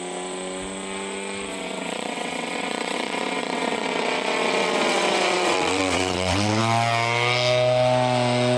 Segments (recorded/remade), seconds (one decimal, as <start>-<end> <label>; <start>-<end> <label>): 0.0-1.5 recorded; 1.5-6.6 remade; 6.6-8.6 recorded